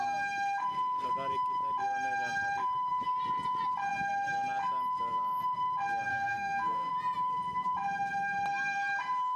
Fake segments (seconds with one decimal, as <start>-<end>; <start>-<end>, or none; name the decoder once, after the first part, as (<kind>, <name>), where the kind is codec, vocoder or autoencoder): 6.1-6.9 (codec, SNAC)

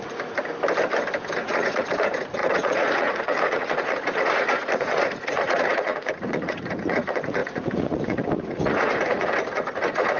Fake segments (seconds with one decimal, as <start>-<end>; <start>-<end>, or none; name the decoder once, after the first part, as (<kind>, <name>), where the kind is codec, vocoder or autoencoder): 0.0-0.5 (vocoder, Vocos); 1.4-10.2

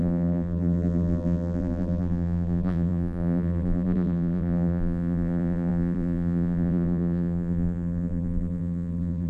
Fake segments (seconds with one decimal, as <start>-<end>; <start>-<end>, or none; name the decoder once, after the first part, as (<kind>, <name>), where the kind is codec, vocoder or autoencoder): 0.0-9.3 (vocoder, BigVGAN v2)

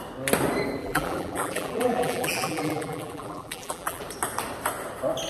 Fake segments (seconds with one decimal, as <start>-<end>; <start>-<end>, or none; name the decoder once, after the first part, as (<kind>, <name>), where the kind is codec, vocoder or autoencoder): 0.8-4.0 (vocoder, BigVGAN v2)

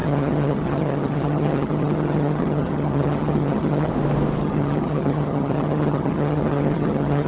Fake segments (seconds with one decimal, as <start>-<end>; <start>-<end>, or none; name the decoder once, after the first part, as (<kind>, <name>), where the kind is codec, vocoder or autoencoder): 0.0-3.9 (vocoder, HiFi-GAN); 4.4-7.3